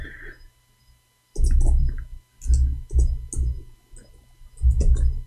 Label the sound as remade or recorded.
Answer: recorded